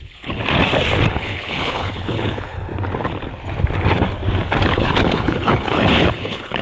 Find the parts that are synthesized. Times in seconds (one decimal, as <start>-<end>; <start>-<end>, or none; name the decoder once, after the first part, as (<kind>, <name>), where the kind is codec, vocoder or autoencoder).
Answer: 0.0-0.4 (codec, HILCodec); 1.1-2.7; 4.7-6.6